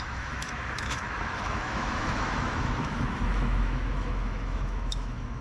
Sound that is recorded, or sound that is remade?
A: remade